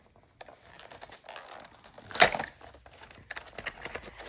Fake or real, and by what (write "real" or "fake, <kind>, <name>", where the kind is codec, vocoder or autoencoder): real